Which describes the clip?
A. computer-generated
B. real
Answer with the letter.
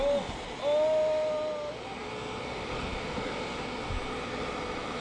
B